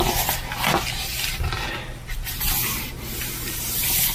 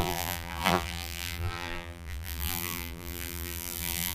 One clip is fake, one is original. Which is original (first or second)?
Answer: first